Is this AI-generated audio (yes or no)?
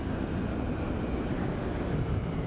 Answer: no